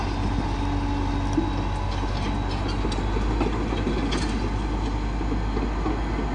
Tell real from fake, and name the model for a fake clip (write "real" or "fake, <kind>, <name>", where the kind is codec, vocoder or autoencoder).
real